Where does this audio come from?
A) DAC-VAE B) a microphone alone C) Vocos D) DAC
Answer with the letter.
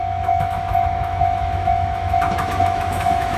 A